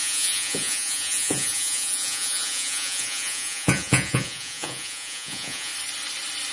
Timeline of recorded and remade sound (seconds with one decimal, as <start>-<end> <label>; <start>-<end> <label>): 0.0-5.7 remade; 5.7-6.5 recorded